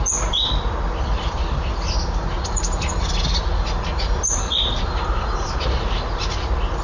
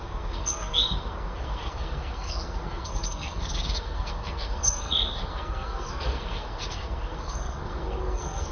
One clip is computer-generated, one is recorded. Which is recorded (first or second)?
first